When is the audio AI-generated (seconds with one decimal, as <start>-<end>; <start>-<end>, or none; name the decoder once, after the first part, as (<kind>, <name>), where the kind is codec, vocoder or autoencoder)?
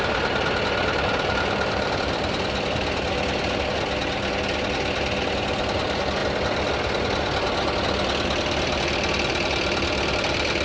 none